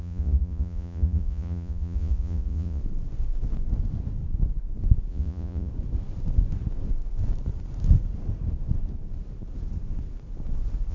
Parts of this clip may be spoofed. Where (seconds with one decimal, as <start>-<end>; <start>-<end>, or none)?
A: 0.0-2.8; 5.1-5.7